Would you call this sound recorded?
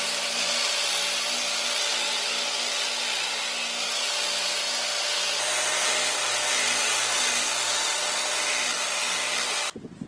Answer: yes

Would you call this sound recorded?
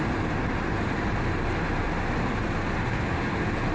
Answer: yes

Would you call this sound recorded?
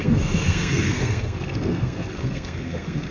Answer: no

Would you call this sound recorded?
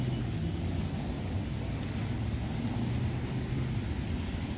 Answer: yes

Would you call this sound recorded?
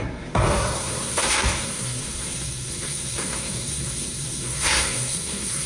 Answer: no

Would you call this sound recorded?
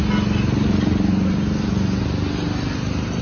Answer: yes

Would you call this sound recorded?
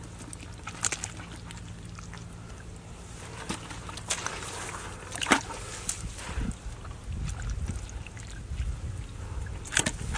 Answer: yes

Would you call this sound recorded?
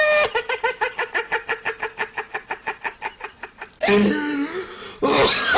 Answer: yes